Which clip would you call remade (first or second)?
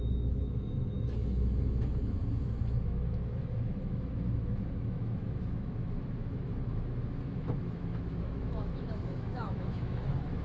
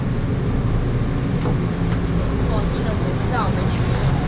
first